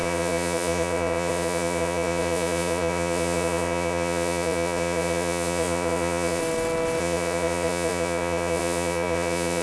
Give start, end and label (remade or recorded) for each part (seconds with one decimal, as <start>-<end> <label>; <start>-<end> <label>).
0.0-6.4 remade; 6.4-7.0 recorded; 7.0-9.6 remade